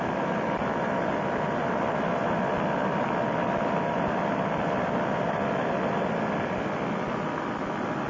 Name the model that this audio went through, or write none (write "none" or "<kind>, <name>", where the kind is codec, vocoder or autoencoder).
none